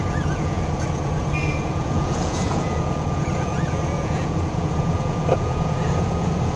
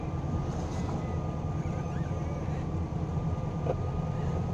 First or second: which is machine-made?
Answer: first